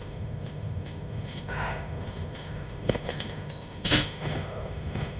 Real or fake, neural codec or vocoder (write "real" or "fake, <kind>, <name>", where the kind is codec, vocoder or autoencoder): fake, autoencoder, DAC-VAE